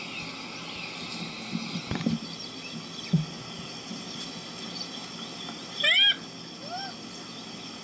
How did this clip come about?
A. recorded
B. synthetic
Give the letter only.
A